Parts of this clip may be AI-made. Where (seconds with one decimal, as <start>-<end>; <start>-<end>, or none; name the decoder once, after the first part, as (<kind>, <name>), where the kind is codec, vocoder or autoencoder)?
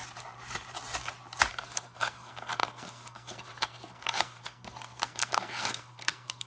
1.5-6.5 (codec, SNAC)